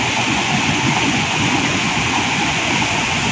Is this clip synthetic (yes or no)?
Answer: yes